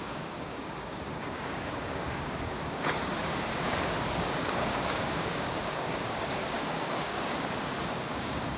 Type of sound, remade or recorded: remade